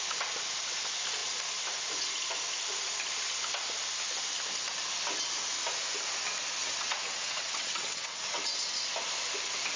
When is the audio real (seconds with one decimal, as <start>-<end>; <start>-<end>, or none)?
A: 0.0-6.6; 8.4-9.8